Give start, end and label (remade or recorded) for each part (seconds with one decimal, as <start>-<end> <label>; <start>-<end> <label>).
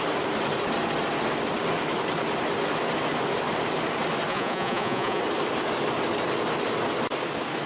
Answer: 0.0-4.3 recorded; 4.3-5.2 remade; 5.2-7.7 recorded